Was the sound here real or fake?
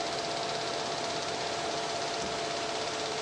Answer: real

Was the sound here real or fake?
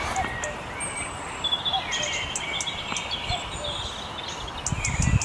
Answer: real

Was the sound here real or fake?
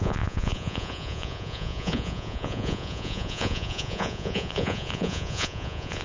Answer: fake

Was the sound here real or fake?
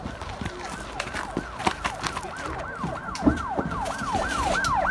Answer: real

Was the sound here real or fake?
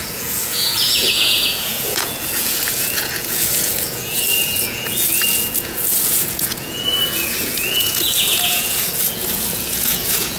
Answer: fake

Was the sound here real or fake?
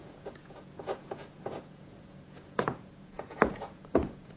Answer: fake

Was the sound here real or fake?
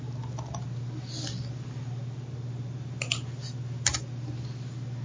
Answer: real